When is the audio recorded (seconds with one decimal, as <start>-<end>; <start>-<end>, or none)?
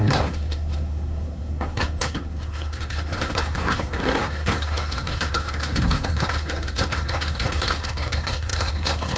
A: none